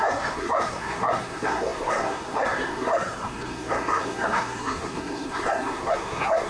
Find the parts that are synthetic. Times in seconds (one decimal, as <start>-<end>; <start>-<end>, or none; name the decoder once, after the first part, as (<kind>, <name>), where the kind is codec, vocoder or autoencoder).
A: 0.0-6.5 (codec, SNAC)